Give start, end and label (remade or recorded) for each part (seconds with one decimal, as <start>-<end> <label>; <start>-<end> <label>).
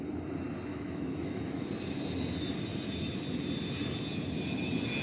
0.0-0.7 recorded; 0.7-1.7 remade; 1.7-5.0 recorded